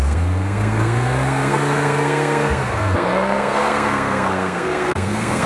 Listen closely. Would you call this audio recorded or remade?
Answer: remade